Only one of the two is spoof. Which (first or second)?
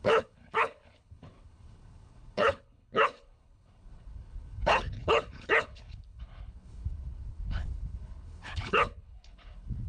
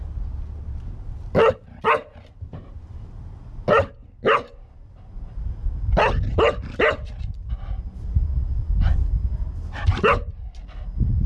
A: first